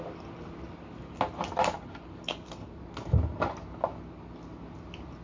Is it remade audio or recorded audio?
recorded